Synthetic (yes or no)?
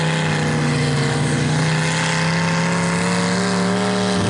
no